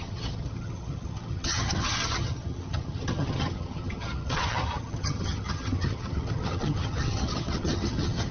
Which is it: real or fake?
fake